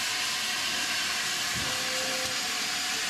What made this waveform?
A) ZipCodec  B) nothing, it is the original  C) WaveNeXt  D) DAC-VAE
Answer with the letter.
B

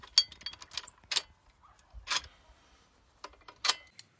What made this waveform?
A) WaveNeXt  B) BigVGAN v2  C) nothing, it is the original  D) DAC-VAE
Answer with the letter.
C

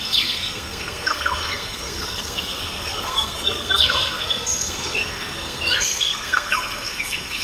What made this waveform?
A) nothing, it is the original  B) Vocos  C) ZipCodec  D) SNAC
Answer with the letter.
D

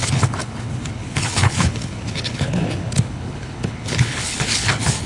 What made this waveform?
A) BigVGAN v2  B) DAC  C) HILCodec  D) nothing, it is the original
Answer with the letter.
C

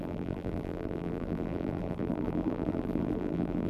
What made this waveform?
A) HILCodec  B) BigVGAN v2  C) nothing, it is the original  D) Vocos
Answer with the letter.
B